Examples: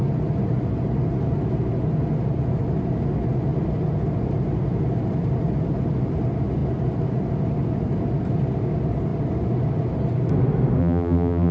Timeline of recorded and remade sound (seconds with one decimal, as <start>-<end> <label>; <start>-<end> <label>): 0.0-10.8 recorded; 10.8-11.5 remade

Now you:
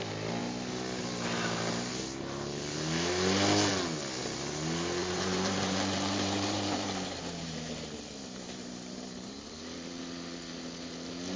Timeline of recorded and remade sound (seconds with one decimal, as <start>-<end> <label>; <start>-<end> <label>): 0.0-5.0 recorded; 5.0-10.0 remade; 10.0-11.4 recorded

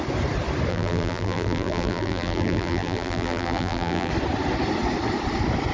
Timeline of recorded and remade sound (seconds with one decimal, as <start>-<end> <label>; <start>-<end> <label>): 0.0-0.7 recorded; 0.7-4.1 remade; 4.1-5.7 recorded